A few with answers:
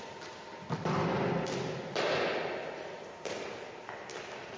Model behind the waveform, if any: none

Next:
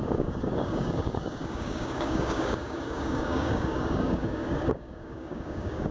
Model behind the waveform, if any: codec, DAC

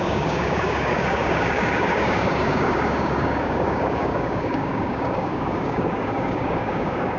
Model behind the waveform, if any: codec, DAC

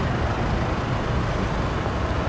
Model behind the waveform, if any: none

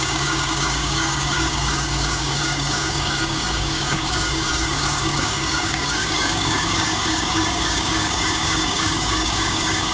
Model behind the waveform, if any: codec, DAC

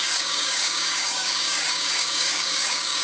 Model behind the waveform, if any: codec, DAC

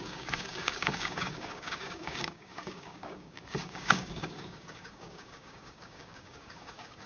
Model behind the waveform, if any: codec, DAC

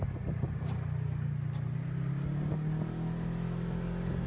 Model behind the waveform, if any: none